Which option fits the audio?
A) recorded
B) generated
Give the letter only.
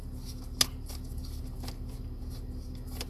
A